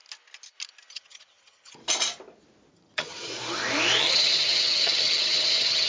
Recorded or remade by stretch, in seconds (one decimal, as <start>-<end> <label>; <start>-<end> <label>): 0.0-0.9 recorded; 0.9-1.8 remade; 1.8-2.7 recorded; 2.7-3.3 remade; 3.3-4.0 recorded; 4.0-5.9 remade